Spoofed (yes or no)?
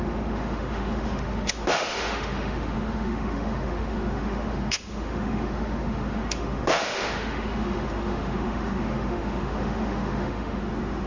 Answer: yes